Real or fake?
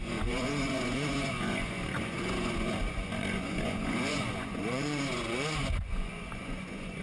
fake